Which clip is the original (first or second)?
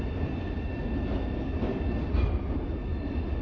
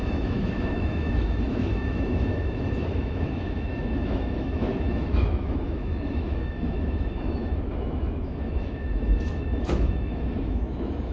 first